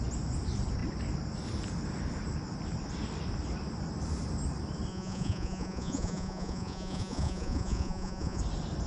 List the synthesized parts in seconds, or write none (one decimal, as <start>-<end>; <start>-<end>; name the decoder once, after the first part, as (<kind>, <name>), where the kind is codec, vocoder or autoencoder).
4.9-8.4 (vocoder, Vocos)